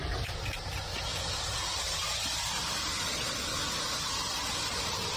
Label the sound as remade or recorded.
recorded